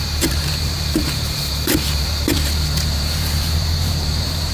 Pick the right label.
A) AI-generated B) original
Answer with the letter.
A